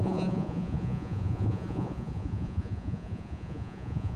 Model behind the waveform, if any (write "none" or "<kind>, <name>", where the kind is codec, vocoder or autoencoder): vocoder, Vocos